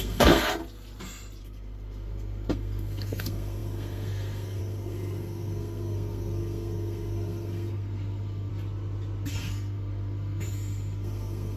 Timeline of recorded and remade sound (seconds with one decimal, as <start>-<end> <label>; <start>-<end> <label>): 0.0-0.6 remade; 0.6-1.4 recorded; 1.4-8.5 remade; 8.5-9.3 recorded; 9.3-11.6 remade